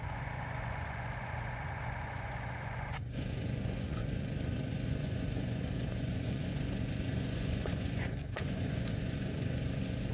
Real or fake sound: fake